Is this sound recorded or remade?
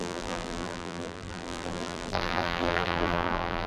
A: remade